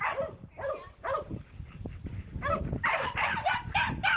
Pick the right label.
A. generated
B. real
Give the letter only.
A